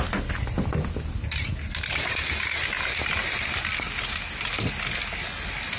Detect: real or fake real